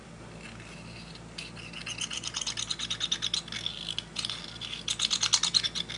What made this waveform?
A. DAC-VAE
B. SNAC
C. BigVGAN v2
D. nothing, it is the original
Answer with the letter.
D